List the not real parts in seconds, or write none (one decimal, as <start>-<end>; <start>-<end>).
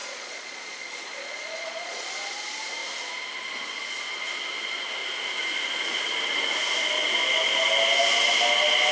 0.0-2.1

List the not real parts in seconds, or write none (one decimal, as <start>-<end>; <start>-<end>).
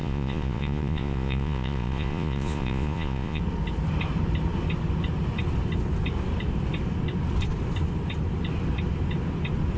0.0-3.4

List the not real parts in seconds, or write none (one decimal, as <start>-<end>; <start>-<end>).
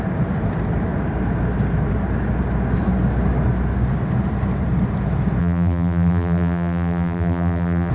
5.4-7.9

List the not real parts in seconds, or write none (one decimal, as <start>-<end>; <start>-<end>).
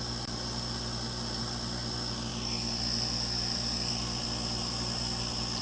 none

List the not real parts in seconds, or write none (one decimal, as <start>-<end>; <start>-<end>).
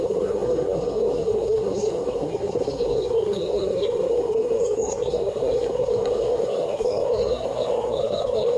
0.0-8.6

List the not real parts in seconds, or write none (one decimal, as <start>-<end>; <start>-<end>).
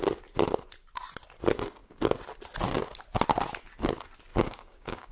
4.3-5.1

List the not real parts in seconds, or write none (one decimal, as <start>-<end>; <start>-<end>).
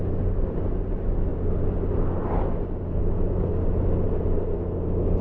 none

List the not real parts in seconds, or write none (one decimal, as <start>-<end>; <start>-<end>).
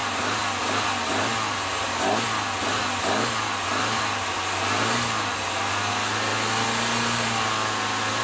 none